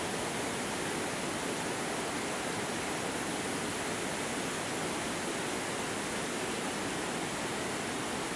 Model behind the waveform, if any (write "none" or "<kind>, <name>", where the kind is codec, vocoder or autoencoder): none